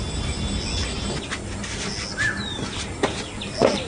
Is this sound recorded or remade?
recorded